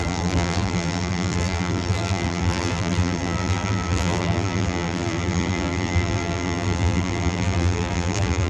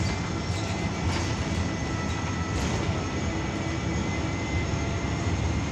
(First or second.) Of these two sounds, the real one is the second